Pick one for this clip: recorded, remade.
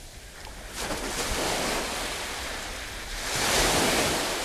recorded